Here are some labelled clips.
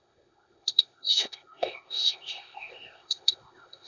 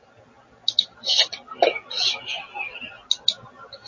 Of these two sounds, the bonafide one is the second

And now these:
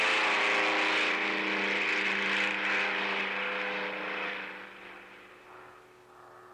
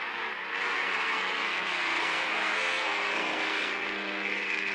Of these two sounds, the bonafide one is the first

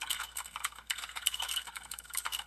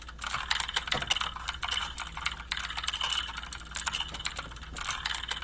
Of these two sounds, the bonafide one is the second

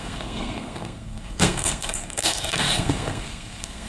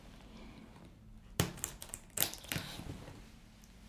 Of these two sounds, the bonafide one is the second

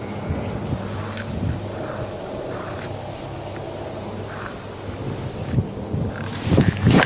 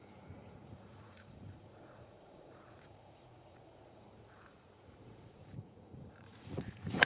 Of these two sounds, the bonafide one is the first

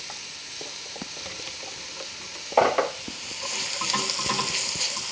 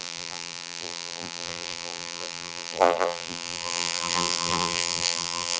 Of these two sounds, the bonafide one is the first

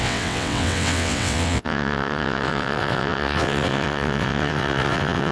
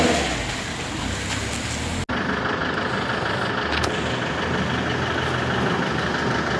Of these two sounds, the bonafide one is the second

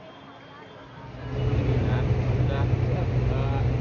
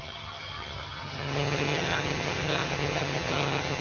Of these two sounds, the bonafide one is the first